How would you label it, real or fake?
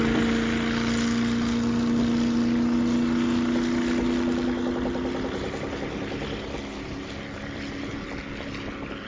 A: real